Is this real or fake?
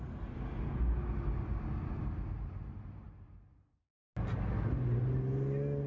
real